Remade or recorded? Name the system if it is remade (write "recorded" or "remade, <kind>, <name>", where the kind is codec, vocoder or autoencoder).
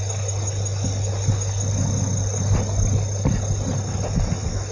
recorded